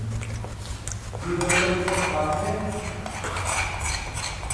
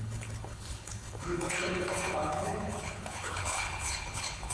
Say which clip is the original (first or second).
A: first